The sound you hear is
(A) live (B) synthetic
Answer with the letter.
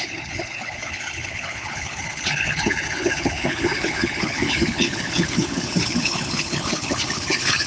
B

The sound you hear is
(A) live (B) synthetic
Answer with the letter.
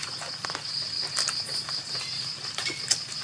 A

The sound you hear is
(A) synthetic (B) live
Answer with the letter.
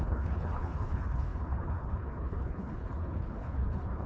A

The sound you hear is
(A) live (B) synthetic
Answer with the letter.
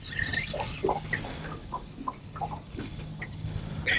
A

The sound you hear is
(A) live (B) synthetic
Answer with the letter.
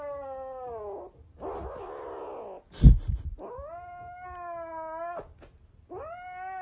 A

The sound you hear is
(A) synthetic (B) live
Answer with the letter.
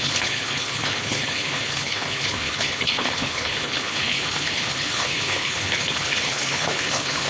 A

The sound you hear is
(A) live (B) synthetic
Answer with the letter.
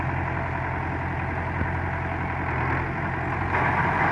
A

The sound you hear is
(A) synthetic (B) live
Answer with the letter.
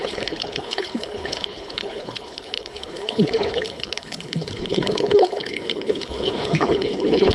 A